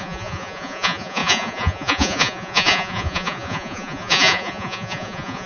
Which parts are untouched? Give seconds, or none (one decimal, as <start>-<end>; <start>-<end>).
none